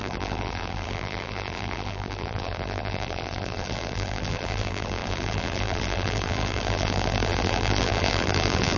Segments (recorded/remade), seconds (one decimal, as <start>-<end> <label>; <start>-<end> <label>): 0.0-8.8 remade